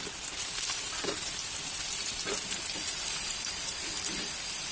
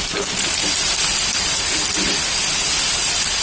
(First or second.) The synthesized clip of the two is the first